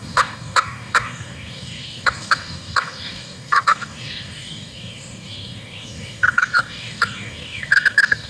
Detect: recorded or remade remade